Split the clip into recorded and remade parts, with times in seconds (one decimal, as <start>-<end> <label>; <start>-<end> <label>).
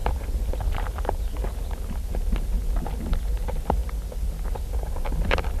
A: 0.0-5.6 recorded